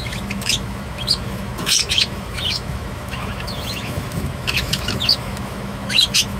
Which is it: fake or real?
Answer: fake